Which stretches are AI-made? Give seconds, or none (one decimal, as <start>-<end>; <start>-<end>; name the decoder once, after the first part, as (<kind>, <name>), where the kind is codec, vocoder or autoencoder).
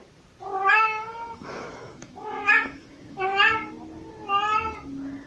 0.7-3.3 (autoencoder, DAC-VAE)